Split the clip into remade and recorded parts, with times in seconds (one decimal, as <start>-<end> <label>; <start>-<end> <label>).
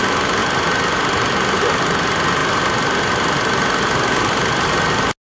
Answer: 0.0-5.3 recorded